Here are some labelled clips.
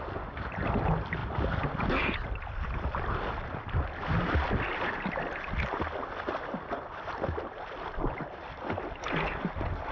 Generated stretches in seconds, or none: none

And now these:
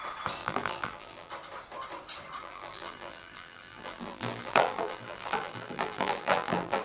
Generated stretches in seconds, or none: 0.4-1.3 (vocoder, BigVGAN v2); 2.4-6.8

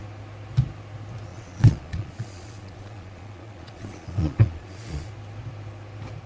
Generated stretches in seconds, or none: 1.3-5.1 (vocoder, Vocos)

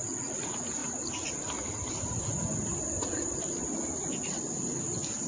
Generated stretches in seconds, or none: none

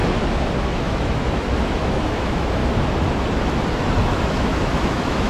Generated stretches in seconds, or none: 0.7-2.6 (autoencoder, DAC-VAE); 4.0-5.3

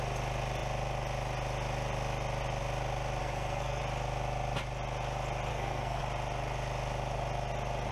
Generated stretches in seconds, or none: 3.2-3.8 (codec, SNAC); 5.5-6.0